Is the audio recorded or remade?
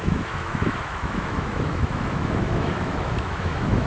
remade